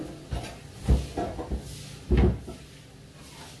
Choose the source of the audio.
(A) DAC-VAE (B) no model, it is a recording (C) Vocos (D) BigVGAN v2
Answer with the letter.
B